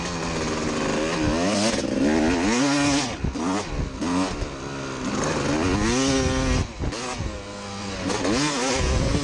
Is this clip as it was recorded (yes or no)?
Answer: yes